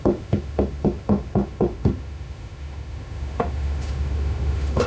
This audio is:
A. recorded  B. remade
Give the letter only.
B